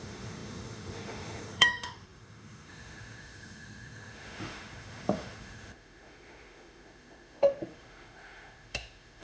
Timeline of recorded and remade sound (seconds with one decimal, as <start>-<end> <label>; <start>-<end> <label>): 0.0-9.2 remade